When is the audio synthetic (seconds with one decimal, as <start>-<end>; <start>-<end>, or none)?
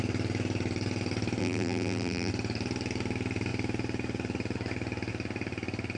1.4-2.3